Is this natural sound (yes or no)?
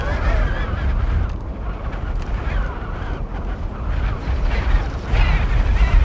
yes